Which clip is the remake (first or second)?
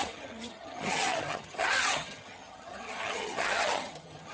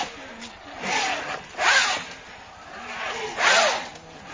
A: first